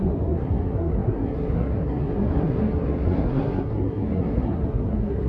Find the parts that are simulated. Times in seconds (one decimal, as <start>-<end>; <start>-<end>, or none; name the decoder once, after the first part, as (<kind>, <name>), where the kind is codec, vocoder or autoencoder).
0.0-5.3 (codec, SNAC)